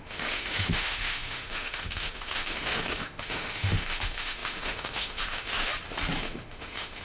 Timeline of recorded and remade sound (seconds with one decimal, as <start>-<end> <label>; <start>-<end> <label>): 0.0-5.7 remade; 5.7-6.2 recorded; 6.2-7.0 remade